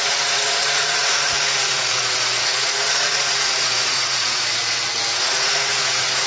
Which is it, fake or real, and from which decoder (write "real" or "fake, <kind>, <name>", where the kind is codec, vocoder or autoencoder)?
fake, vocoder, Vocos